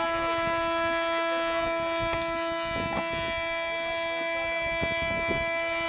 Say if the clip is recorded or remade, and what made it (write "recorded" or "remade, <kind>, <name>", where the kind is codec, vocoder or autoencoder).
recorded